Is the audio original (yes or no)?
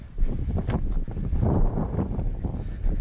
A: yes